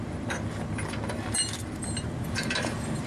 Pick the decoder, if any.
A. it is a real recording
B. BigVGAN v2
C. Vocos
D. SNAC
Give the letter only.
B